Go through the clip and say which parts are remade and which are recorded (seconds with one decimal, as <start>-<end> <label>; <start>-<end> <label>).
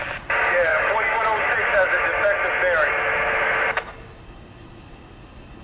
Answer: 0.0-0.7 recorded; 0.7-1.2 remade; 1.2-5.6 recorded